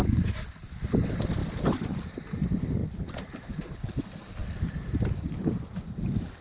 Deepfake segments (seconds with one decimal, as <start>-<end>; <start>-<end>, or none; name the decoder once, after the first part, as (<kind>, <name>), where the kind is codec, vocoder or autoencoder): none